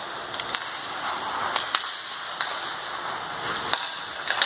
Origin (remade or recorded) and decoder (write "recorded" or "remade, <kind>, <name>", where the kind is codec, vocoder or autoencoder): recorded